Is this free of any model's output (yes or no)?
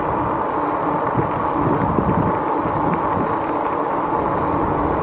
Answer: yes